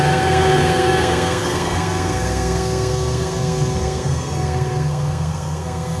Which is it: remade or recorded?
remade